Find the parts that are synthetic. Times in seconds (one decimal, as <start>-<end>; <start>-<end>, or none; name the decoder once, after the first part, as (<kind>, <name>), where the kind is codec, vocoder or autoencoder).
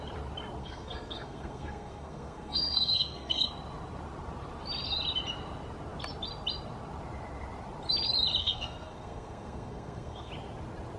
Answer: 0.6-3.5 (codec, SNAC); 8.4-10.3